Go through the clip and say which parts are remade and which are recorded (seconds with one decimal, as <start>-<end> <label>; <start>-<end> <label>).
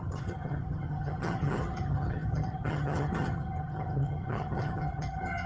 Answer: 0.0-5.5 remade